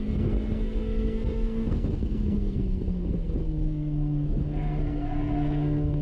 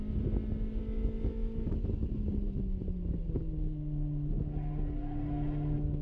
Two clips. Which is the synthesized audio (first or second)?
first